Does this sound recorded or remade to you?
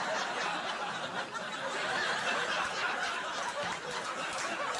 recorded